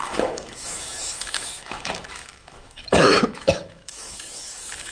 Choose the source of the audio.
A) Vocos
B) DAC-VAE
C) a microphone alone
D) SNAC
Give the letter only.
B